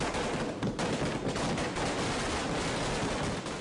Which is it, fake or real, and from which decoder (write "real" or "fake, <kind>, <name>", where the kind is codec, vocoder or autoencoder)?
real